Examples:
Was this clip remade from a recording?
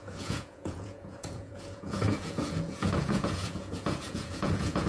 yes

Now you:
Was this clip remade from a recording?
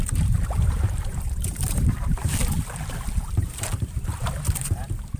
yes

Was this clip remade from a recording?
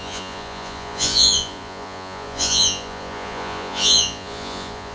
yes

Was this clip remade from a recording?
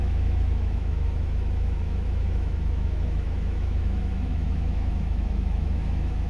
yes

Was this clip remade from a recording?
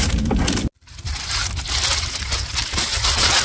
no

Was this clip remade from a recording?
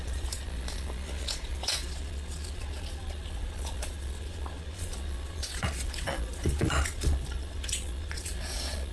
yes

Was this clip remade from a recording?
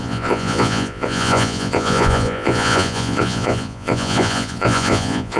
yes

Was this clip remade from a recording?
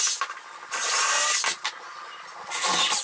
no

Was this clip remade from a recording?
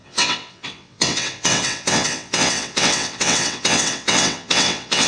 yes